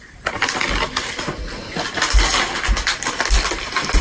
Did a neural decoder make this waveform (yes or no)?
no